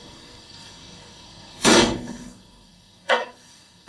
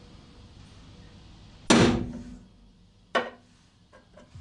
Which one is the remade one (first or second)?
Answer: first